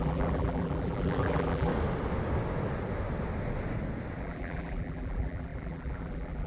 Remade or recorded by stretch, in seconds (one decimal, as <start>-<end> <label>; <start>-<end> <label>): 0.0-1.7 remade; 1.7-4.2 recorded; 4.2-6.5 remade